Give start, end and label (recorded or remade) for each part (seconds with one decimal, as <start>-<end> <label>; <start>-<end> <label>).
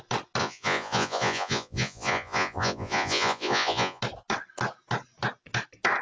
0.0-0.4 recorded; 0.4-4.0 remade; 4.0-6.0 recorded